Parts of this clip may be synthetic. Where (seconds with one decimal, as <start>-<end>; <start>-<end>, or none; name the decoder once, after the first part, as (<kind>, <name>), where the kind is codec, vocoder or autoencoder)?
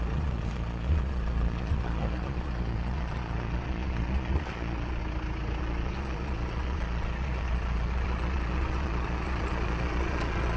0.0-5.0 (vocoder, Vocos); 5.6-10.6